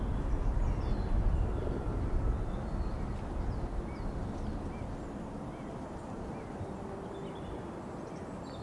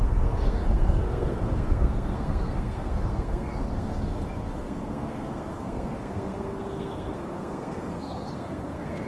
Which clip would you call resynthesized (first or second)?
second